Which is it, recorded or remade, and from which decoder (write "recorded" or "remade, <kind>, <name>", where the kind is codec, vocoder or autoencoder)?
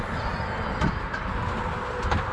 recorded